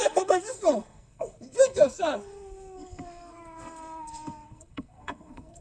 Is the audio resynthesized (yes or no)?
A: yes